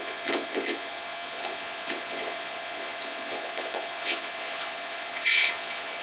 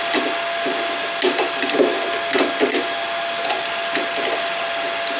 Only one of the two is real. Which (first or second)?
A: second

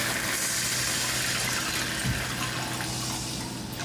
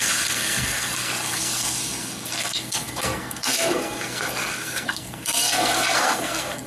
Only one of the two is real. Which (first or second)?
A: first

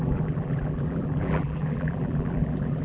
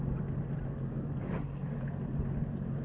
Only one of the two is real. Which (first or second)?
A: second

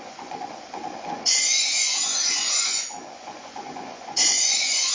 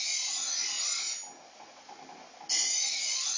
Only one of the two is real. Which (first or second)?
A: second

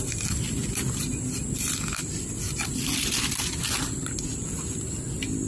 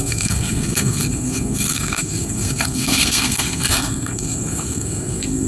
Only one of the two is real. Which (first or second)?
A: first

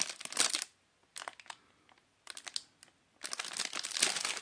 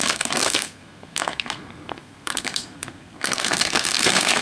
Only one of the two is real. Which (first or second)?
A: first